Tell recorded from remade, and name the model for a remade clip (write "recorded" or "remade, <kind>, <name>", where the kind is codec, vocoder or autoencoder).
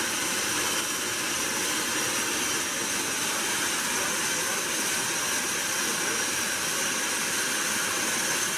recorded